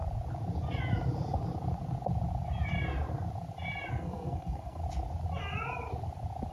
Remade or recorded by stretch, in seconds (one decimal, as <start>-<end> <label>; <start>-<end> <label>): 0.0-3.9 recorded; 3.9-4.8 remade; 4.8-6.5 recorded